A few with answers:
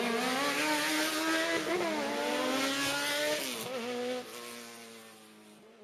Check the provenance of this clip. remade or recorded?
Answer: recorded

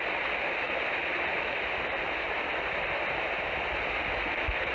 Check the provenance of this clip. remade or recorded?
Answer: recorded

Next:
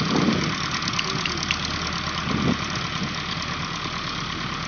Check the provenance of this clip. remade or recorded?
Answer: recorded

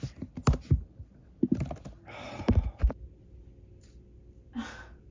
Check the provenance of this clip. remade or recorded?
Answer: recorded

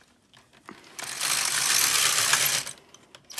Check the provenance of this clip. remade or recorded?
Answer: recorded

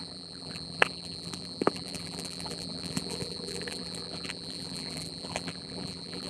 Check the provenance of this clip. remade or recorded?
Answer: remade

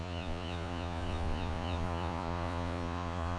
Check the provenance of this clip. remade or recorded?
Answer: remade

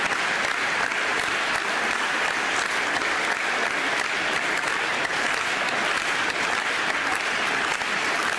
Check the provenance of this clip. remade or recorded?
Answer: recorded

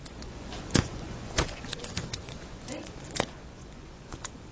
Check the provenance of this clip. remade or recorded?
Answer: remade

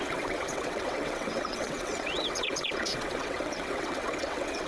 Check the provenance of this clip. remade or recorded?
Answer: remade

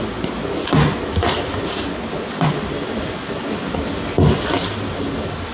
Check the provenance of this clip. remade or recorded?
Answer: recorded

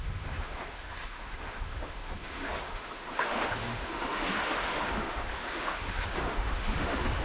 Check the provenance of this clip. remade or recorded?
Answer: remade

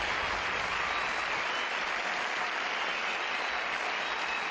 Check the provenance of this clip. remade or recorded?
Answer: recorded